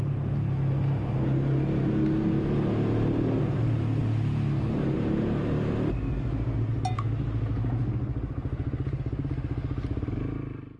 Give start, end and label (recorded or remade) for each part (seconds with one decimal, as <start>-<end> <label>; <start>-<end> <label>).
0.0-10.8 recorded